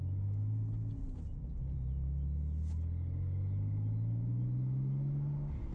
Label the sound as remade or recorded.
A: recorded